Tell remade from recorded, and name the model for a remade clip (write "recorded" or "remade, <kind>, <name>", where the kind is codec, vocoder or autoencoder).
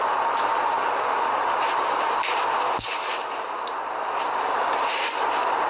recorded